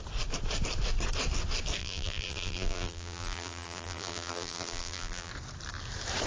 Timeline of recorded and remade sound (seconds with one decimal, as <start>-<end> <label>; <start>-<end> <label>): 0.0-1.8 recorded; 1.8-5.3 remade; 5.3-6.3 recorded